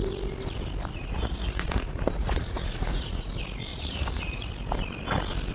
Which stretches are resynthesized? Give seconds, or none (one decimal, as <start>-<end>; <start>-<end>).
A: 0.9-3.3; 3.7-4.5